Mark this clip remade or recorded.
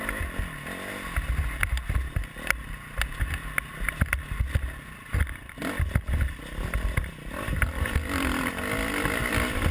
recorded